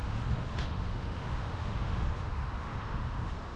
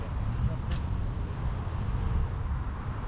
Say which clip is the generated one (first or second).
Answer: first